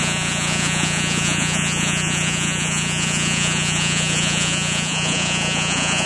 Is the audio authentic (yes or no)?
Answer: no